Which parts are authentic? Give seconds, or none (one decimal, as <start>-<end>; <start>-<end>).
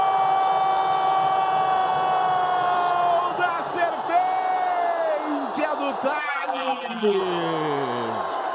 0.0-6.2; 7.2-8.5